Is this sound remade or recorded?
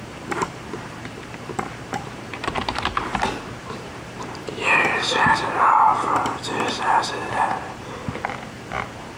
remade